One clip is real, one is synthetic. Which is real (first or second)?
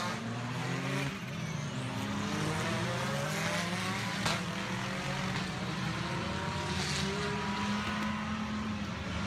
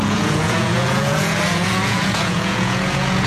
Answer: first